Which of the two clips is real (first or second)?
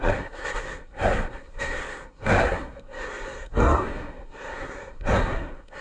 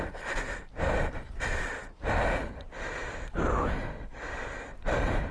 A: second